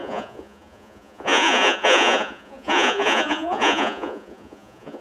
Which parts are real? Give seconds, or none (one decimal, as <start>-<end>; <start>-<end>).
none